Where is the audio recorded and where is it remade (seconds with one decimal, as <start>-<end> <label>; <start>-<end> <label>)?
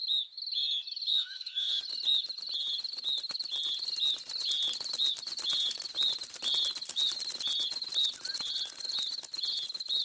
0.0-1.1 recorded; 1.1-1.8 remade; 1.8-10.0 recorded